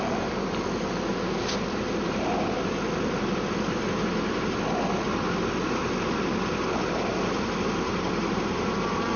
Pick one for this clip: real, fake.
real